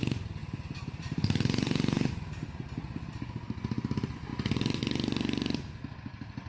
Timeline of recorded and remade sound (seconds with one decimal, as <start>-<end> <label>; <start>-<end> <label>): 0.0-0.4 recorded; 0.4-2.1 remade; 2.1-6.5 recorded